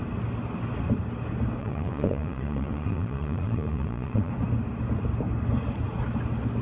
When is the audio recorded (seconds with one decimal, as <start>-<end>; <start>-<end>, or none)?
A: 0.0-1.6; 4.3-6.6